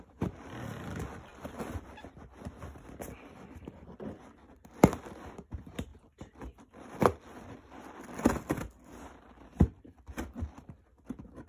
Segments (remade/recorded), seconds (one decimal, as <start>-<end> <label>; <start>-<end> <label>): 0.0-11.5 recorded